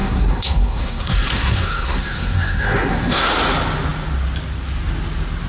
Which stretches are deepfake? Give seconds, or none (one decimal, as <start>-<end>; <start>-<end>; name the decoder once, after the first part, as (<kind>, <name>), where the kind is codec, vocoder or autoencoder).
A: 0.0-3.3 (codec, SNAC)